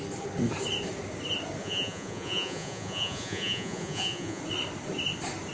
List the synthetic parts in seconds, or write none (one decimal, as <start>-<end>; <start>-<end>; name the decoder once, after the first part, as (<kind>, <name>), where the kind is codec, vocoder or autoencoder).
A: 1.6-4.4 (vocoder, Vocos)